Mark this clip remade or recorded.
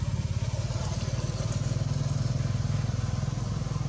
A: recorded